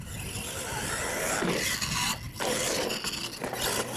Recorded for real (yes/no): yes